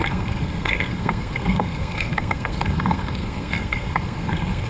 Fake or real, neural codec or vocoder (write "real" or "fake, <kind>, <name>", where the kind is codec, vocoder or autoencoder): fake, codec, SNAC